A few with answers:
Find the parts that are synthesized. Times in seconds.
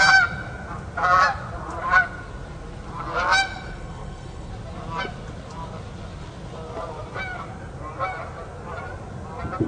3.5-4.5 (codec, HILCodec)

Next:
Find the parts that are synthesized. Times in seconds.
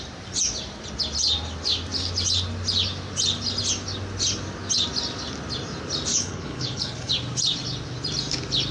6.1-7.1 (codec, HILCodec)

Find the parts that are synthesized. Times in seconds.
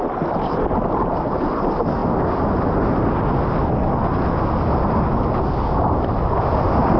none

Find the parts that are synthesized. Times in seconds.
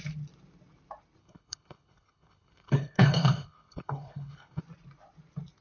1.2-4.6 (codec, HILCodec)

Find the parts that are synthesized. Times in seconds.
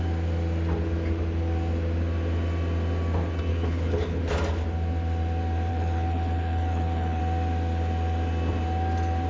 3.5-4.2 (codec, HILCodec); 5.7-7.2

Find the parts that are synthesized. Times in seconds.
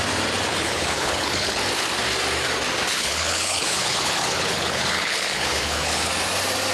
0.5-1.6 (codec, HILCodec); 2.9-6.1